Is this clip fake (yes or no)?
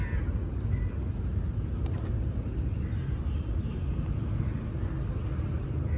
no